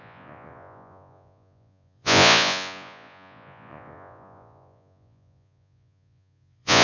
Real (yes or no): no